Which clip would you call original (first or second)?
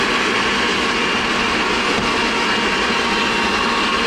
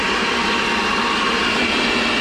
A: first